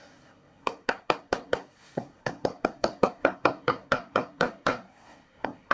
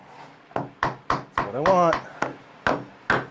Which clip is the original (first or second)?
second